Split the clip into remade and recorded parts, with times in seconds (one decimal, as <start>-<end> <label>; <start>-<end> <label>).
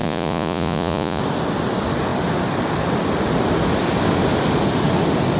0.0-1.2 remade; 1.2-5.4 recorded